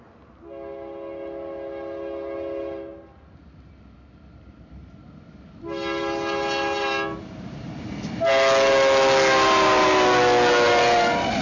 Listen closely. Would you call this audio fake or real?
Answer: real